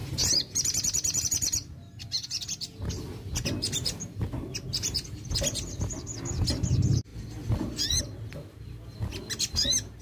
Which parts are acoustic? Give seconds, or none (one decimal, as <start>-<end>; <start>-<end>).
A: 0.0-10.0